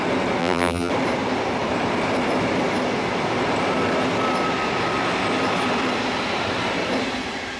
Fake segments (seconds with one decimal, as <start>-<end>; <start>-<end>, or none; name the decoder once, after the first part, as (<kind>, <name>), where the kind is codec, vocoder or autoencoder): 0.4-0.9 (vocoder, BigVGAN v2)